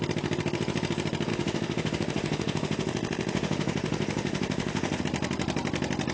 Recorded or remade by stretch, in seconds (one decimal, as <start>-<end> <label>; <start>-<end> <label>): 0.0-1.3 recorded; 1.3-5.0 remade; 5.0-6.1 recorded